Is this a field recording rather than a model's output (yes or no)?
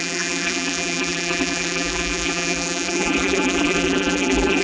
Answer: no